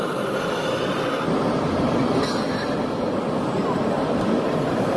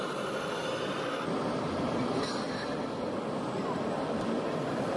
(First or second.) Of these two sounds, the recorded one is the second